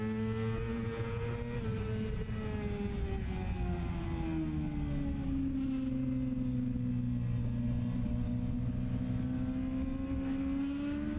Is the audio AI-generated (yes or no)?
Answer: no